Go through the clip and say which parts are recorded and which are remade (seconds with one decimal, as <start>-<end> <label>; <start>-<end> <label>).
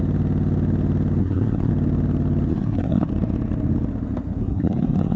0.0-1.2 recorded; 1.2-1.7 remade; 1.7-2.5 recorded; 2.5-3.1 remade; 3.1-4.4 recorded; 4.4-5.2 remade